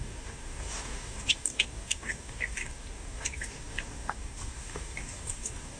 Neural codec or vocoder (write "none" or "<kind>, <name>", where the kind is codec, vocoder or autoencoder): codec, DAC